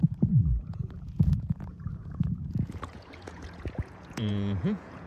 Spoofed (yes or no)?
yes